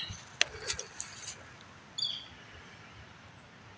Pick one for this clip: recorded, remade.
recorded